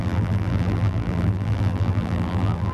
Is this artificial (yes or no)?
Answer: yes